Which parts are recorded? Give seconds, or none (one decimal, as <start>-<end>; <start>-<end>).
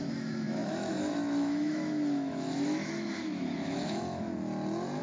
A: 4.3-5.0